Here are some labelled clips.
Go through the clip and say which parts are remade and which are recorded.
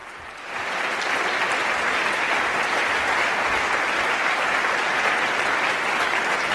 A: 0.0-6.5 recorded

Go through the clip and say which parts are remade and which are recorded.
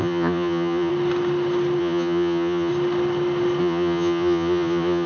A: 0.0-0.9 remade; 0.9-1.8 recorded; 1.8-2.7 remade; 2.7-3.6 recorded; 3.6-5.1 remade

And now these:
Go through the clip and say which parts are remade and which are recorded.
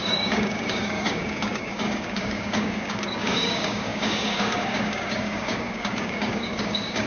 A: 0.0-7.1 remade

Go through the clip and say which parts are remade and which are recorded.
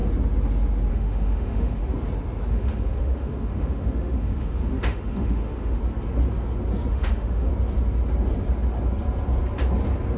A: 0.0-0.9 recorded; 0.9-1.8 remade; 1.8-2.5 recorded; 2.5-5.8 remade; 5.8-6.9 recorded; 6.9-7.5 remade; 7.5-10.2 recorded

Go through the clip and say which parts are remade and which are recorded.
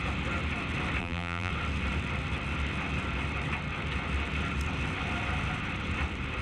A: 0.0-1.0 recorded; 1.0-1.5 remade; 1.5-6.4 recorded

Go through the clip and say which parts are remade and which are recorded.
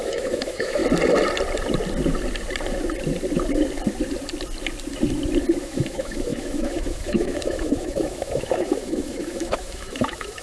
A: 0.0-0.8 remade; 0.8-5.6 recorded; 5.6-10.4 remade